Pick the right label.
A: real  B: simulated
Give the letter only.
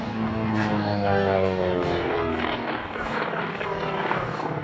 B